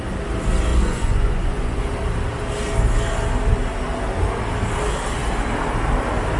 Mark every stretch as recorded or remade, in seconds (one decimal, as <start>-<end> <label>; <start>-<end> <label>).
0.0-0.7 recorded; 0.7-1.8 remade; 1.8-6.4 recorded